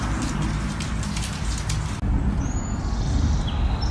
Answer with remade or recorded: recorded